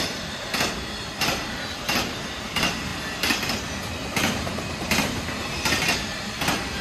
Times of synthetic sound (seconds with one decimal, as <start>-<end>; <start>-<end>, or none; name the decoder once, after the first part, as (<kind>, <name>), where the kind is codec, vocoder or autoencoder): none